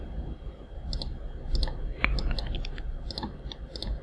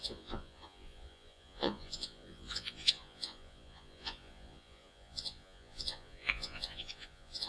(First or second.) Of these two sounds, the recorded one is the first